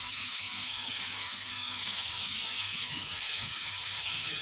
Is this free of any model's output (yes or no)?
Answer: no